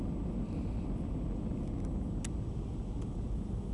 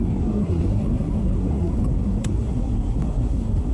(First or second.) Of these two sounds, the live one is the first